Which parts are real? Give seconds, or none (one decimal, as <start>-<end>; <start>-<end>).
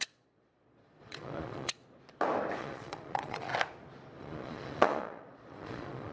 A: 1.8-2.6; 3.5-4.2